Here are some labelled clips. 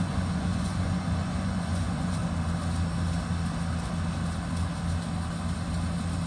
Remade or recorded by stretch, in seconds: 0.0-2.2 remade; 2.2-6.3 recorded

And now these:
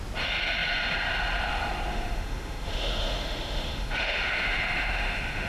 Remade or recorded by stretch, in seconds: 0.0-1.9 recorded; 1.9-5.5 remade

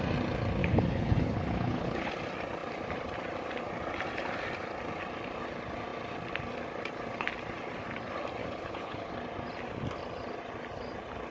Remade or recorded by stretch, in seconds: 0.0-0.6 recorded; 0.6-2.1 remade; 2.1-8.4 recorded; 8.4-9.1 remade; 9.1-11.3 recorded

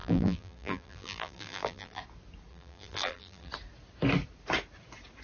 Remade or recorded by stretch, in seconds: 0.0-2.0 remade; 2.0-2.5 recorded; 2.5-3.5 remade; 3.5-5.2 recorded